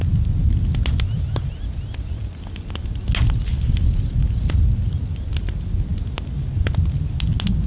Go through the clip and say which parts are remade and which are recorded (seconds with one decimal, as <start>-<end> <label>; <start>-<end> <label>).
0.0-7.7 recorded